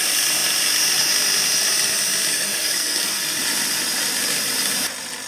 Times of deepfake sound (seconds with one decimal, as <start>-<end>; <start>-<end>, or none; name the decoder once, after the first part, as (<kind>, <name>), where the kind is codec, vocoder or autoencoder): 2.3-3.2 (codec, SNAC)